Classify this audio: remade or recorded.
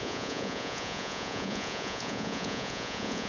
remade